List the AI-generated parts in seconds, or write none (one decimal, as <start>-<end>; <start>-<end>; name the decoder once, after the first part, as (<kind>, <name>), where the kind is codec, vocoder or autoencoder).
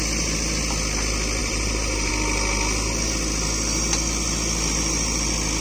1.4-2.1 (vocoder, BigVGAN v2)